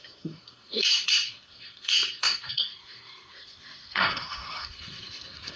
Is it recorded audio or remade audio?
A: remade